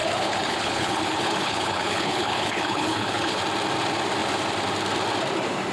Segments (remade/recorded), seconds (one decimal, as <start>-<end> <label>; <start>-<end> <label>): 0.0-3.4 remade; 3.4-5.7 recorded